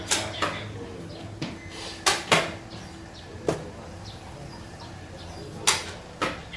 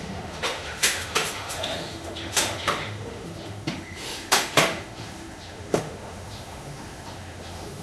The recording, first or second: first